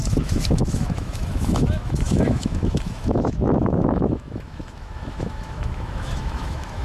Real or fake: fake